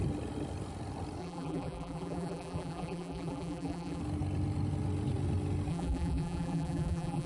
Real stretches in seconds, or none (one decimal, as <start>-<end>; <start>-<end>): 0.0-1.2; 4.0-5.7